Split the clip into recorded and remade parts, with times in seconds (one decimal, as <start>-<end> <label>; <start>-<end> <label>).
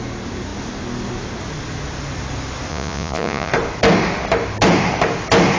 0.0-2.7 recorded; 2.7-3.5 remade; 3.5-5.6 recorded